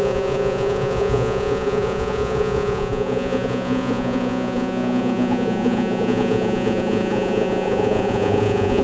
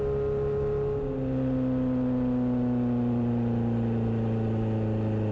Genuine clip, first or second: second